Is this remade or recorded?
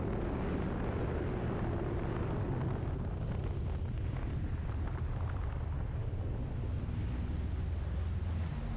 recorded